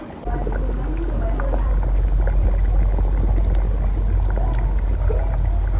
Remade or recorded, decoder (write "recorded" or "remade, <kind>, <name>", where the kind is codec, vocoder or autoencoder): recorded